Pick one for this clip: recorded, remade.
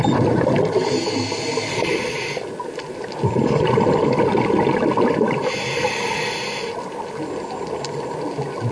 recorded